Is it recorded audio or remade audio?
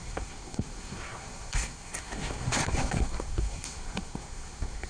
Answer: remade